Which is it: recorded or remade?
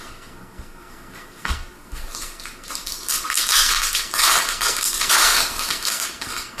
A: remade